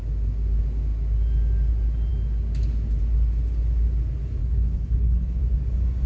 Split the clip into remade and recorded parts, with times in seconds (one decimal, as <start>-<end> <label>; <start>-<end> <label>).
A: 0.0-4.4 recorded; 4.4-5.4 remade; 5.4-6.1 recorded